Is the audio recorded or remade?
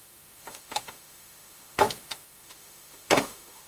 remade